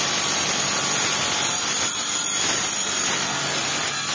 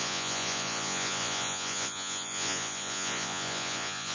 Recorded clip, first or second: first